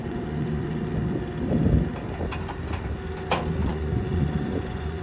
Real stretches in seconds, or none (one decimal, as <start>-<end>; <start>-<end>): 0.8-3.6